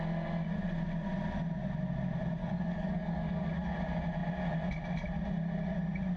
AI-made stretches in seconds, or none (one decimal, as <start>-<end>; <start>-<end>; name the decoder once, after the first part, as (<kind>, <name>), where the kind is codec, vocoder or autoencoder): 2.4-3.5 (codec, DAC)